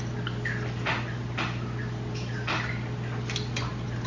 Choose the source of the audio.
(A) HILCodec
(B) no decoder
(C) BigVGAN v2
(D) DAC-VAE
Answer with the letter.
B